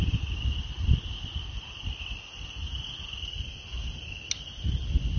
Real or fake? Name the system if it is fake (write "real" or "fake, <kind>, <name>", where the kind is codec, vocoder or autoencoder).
real